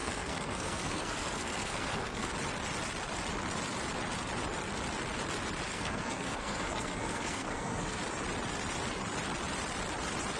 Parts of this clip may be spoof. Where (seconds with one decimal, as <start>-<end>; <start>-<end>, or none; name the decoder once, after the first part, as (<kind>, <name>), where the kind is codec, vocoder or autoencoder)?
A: 0.0-2.3 (codec, SNAC); 5.7-8.0